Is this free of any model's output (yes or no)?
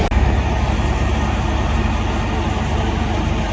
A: yes